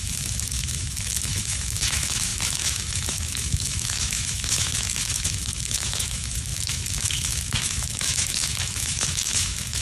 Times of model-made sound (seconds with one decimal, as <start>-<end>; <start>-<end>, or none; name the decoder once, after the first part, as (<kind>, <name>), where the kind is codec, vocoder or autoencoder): 0.0-9.8 (autoencoder, DAC-VAE)